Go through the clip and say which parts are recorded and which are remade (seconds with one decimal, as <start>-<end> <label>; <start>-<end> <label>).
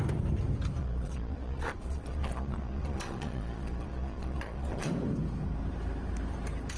0.0-0.8 recorded; 0.8-4.9 remade; 4.9-6.8 recorded